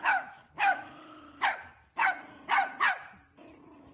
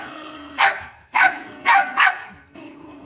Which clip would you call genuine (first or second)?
first